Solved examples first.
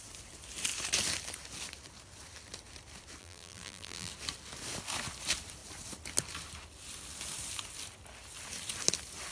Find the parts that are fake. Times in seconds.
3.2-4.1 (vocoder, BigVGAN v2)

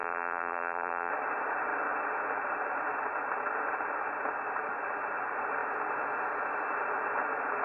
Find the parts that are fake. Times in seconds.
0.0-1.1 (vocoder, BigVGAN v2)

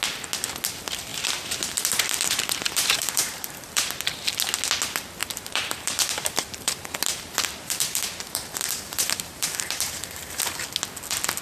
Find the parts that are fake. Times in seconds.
1.1-3.9 (vocoder, BigVGAN v2); 5.2-10.4

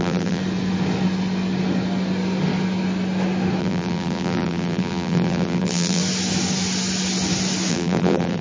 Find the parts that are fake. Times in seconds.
0.0-0.4 (vocoder, BigVGAN v2); 3.6-6.0; 7.7-8.4

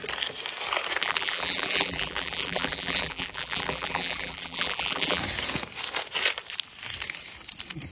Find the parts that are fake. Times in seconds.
1.0-5.2 (vocoder, BigVGAN v2)

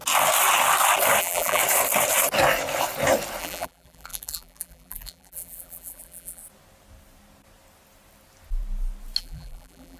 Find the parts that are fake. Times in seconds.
1.2-1.6 (vocoder, BigVGAN v2); 3.4-6.4; 9.2-10.0

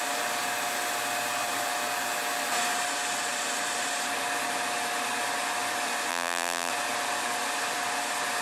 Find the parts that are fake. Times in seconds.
6.1-6.7 (vocoder, BigVGAN v2)